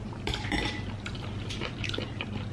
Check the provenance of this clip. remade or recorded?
recorded